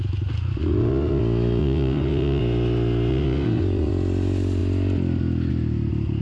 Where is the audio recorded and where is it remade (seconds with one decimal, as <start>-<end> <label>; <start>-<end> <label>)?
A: 0.0-0.6 recorded; 0.6-1.2 remade; 1.2-1.6 recorded; 1.6-2.4 remade; 2.4-3.1 recorded; 3.1-3.9 remade; 3.9-6.2 recorded